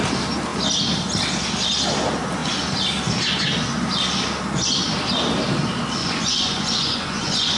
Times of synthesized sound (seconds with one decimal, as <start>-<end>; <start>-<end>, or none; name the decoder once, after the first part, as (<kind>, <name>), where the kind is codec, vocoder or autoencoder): 6.0-7.6 (vocoder, Vocos)